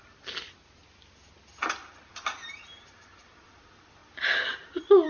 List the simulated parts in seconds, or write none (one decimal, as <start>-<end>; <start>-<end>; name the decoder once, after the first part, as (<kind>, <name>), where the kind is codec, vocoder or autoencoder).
none